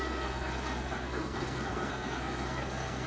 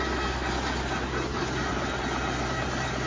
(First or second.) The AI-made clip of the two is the first